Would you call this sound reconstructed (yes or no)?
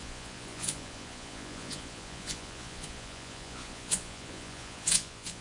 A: yes